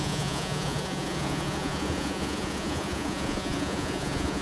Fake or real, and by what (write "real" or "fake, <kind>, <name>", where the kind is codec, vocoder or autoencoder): fake, vocoder, Vocos